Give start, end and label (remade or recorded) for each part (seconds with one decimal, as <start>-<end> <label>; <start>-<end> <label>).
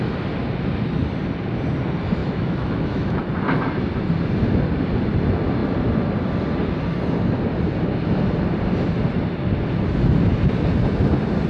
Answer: 0.0-2.2 recorded; 2.2-3.2 remade; 3.2-11.5 recorded